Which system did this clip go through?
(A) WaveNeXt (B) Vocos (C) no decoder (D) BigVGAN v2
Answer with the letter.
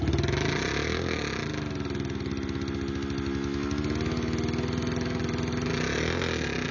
C